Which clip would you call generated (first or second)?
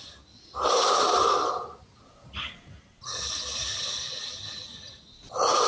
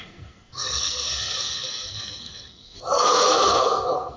second